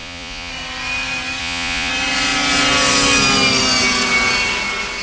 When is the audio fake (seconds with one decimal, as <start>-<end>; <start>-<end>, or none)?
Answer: 0.0-0.5; 1.4-1.9